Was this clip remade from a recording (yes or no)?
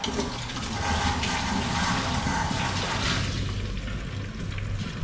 no